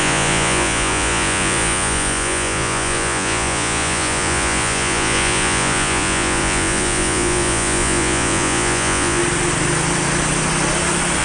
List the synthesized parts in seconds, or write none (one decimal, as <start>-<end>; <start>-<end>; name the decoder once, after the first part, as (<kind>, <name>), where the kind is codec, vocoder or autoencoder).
0.0-9.2 (vocoder, Vocos)